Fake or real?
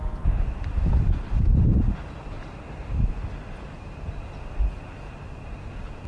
real